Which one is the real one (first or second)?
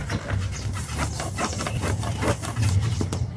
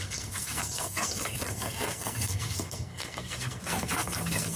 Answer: first